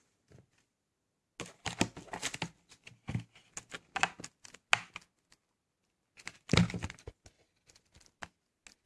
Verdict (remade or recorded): recorded